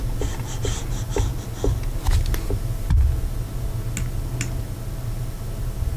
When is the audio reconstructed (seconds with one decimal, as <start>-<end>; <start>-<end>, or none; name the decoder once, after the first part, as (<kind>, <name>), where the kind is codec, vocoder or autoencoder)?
none